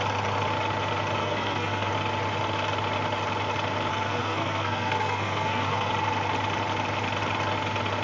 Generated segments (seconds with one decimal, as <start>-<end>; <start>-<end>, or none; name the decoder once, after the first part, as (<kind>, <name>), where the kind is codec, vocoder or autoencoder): 1.2-1.9 (codec, SNAC); 3.9-5.9